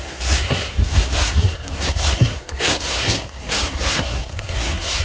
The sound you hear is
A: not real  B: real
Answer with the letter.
A